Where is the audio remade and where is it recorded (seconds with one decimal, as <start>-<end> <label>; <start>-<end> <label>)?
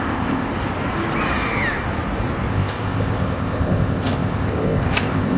0.0-0.5 remade; 0.5-2.5 recorded; 2.5-5.4 remade